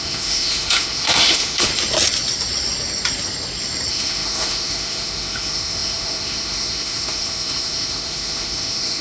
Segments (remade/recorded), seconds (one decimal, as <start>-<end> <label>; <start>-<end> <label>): 0.0-1.7 remade; 1.7-3.9 recorded; 3.9-9.0 remade